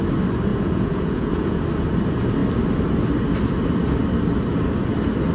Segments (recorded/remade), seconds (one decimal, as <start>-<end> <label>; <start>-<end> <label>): 0.0-0.5 recorded; 0.5-1.6 remade; 1.6-5.3 recorded